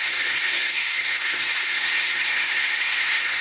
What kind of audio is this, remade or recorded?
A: remade